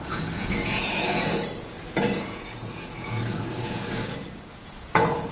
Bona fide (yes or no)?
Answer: no